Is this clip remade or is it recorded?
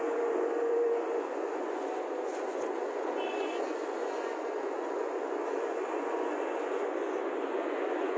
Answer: remade